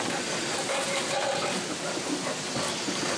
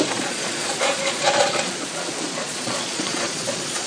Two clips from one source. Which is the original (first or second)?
first